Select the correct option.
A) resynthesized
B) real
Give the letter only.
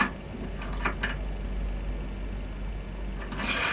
B